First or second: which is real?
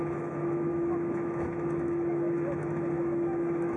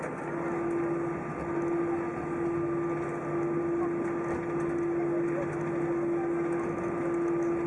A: second